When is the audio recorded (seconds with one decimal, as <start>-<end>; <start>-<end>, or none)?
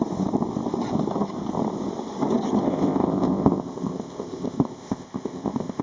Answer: 0.0-2.6